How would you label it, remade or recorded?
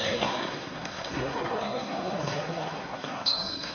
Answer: remade